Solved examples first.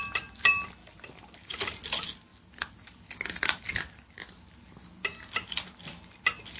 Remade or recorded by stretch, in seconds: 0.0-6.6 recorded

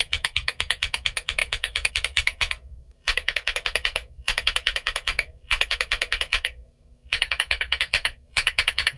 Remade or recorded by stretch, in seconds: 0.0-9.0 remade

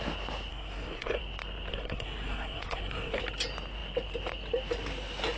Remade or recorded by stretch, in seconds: 0.0-0.5 recorded; 0.5-1.2 remade; 1.2-1.7 recorded; 1.7-3.2 remade; 3.2-5.4 recorded

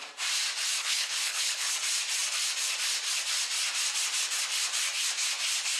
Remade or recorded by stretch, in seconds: 0.0-0.8 recorded; 0.8-1.7 remade; 1.7-5.8 recorded